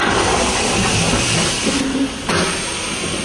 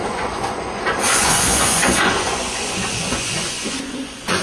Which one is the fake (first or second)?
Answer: second